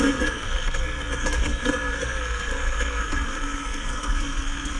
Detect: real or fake fake